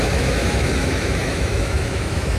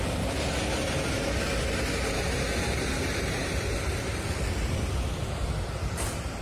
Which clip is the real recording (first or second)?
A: second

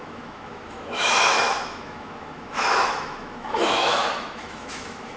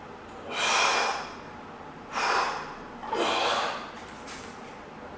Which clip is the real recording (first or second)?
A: second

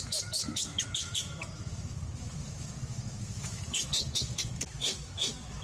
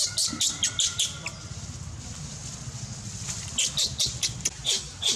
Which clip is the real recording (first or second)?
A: second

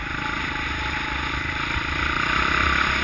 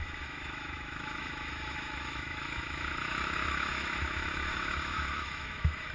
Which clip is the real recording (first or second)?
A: first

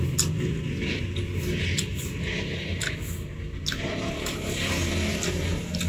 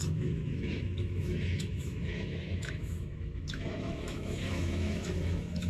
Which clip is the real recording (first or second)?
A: first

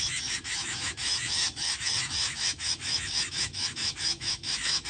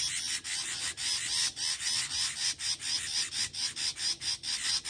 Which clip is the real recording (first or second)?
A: second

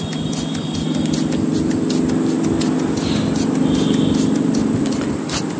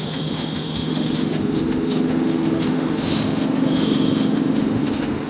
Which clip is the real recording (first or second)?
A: first